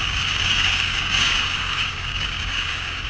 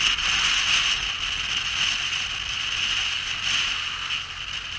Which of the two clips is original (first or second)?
second